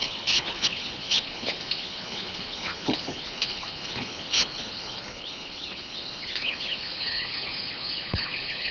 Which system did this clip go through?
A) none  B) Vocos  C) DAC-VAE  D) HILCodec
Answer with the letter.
D